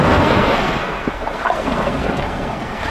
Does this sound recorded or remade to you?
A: remade